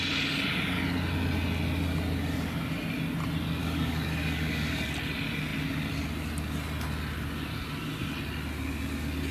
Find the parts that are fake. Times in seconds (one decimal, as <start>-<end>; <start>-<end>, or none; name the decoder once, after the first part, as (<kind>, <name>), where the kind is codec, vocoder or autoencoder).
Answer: 3.6-4.9 (codec, DAC)